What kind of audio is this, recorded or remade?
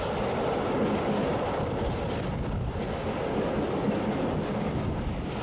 recorded